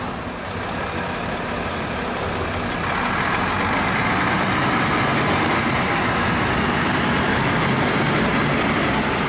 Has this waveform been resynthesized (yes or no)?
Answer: no